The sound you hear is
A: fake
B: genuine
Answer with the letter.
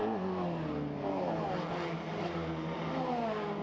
B